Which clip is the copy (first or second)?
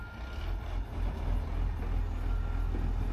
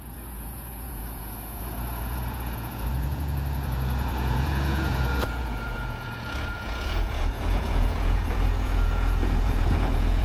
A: second